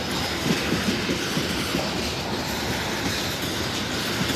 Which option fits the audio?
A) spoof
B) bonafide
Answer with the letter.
B